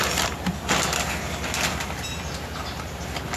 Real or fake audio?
real